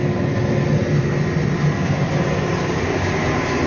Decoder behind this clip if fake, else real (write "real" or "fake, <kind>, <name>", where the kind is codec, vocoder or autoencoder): real